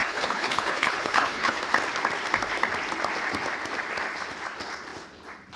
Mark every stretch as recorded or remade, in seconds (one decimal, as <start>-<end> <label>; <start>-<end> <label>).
0.0-1.6 remade; 1.6-5.6 recorded

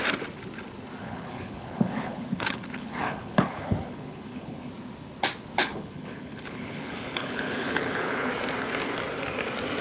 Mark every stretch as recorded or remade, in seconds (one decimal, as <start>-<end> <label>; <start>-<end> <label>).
0.0-1.0 recorded; 1.0-4.7 remade; 4.7-5.6 recorded; 5.6-8.3 remade; 8.3-9.8 recorded

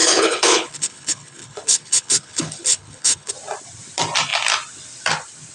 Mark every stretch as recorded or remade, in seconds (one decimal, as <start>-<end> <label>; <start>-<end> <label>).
0.0-3.3 remade; 3.3-5.5 recorded

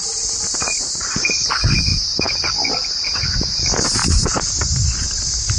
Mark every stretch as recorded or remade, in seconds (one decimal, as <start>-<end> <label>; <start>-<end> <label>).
0.0-5.6 recorded